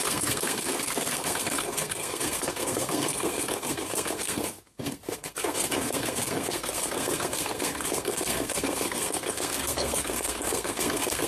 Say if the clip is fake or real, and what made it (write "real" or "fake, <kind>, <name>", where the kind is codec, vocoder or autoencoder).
fake, codec, SNAC